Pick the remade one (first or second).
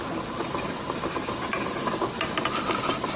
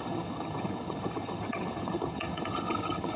second